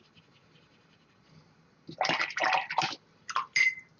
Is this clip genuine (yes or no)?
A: yes